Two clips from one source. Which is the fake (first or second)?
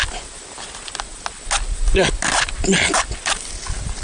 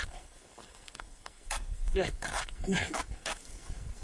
second